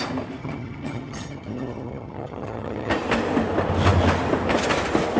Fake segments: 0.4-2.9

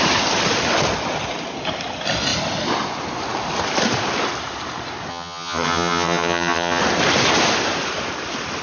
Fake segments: 5.1-6.8

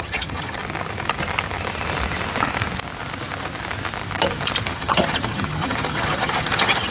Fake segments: 0.0-0.6; 4.7-6.9

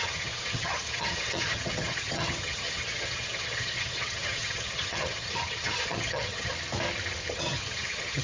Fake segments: 0.0-6.5; 7.3-8.2

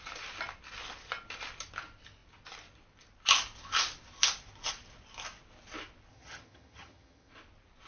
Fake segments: 6.1-7.3

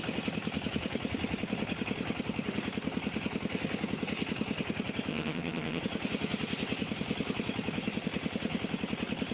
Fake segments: 5.1-5.8

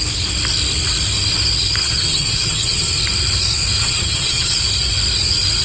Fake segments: 1.8-2.9; 3.8-4.6

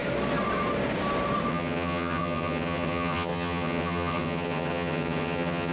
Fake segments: 1.5-5.7